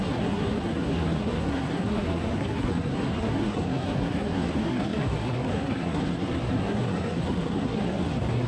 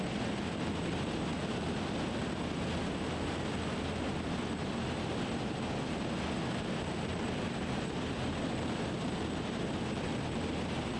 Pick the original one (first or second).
second